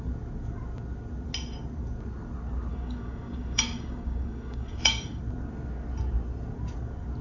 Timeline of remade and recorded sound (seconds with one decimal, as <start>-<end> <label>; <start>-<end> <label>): 0.0-2.7 recorded; 2.7-5.2 remade; 5.2-7.2 recorded